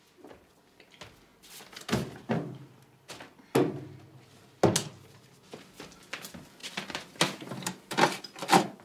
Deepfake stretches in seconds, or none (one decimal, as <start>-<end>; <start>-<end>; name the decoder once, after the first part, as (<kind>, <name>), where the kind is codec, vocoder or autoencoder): 6.6-8.2 (vocoder, BigVGAN v2)